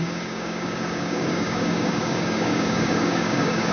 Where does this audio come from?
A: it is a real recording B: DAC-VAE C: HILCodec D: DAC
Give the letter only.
D